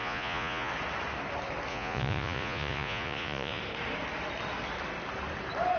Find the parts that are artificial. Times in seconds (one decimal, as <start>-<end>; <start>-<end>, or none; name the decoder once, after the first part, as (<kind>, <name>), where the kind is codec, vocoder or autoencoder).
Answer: 0.0-0.7 (vocoder, Vocos); 1.7-3.6